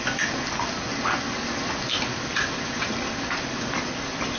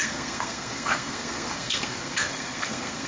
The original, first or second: first